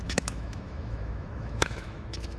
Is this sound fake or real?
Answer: fake